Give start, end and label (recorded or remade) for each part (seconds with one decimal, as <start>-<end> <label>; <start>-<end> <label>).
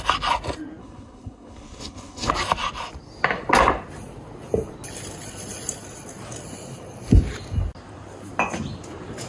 0.0-0.8 recorded; 0.8-2.3 remade; 2.3-9.3 recorded